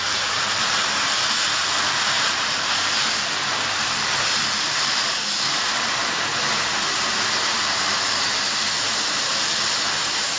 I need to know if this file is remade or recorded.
remade